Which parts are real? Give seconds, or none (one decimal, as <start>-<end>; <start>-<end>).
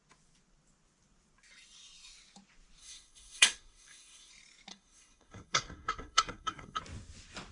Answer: 0.0-2.8; 4.3-4.7; 6.8-7.5